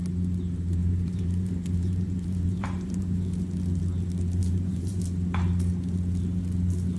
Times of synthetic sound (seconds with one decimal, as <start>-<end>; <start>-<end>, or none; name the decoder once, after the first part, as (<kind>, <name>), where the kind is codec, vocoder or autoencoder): 0.8-3.2 (vocoder, BigVGAN v2); 4.4-5.0